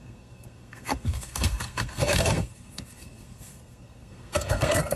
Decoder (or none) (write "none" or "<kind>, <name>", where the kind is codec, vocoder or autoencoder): codec, SNAC